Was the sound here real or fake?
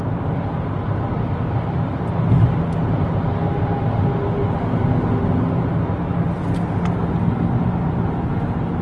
real